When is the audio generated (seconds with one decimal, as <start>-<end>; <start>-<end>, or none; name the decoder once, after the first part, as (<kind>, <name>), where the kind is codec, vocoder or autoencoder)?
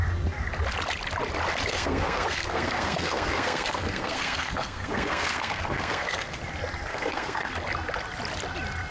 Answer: 1.7-6.4 (codec, SNAC); 6.9-7.5